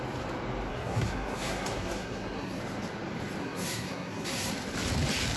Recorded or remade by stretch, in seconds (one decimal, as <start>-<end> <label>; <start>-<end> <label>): 0.0-0.7 recorded; 0.7-2.6 remade; 2.6-3.4 recorded; 3.4-4.5 remade; 4.5-5.4 recorded